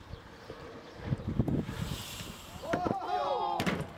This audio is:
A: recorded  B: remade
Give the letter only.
B